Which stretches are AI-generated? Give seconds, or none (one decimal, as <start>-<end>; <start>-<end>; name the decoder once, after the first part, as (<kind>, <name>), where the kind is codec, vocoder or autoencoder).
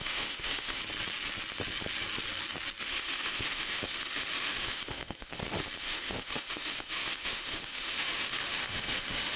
0.0-0.8 (autoencoder, DAC-VAE); 2.8-5.3; 5.8-9.4